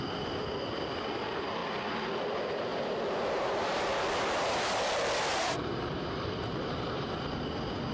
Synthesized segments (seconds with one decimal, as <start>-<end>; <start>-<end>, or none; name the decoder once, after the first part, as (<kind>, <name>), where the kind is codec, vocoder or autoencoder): 2.7-3.8 (vocoder, BigVGAN v2); 5.3-7.2